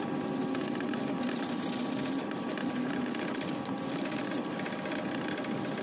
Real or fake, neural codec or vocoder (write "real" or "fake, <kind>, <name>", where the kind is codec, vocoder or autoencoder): real